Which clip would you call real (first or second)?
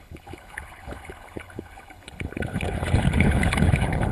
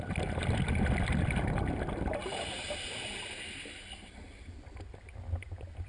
second